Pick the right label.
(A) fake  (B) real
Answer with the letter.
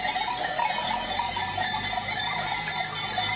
A